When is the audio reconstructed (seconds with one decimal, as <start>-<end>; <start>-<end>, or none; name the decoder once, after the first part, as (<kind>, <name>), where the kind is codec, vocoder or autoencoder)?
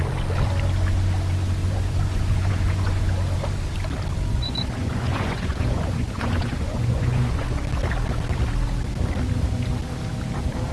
1.6-3.0 (vocoder, Vocos); 4.3-7.6